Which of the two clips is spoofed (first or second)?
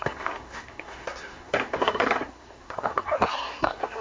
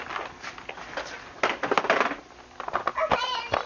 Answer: first